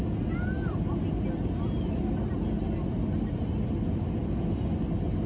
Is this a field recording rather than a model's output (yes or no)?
yes